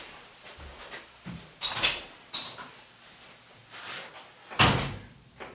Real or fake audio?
real